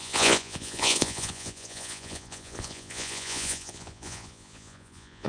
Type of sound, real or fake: fake